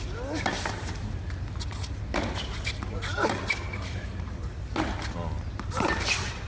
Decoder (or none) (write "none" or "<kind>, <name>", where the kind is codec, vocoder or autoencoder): none